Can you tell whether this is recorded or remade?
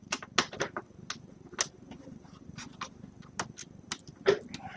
recorded